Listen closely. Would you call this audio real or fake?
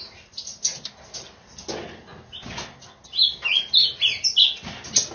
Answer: real